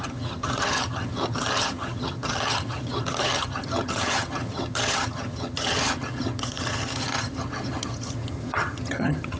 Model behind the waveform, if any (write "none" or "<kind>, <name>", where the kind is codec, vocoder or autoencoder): vocoder, HiFi-GAN